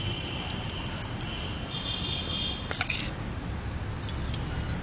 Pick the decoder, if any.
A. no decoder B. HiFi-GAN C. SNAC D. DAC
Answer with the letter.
A